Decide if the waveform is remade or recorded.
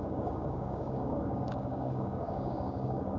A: remade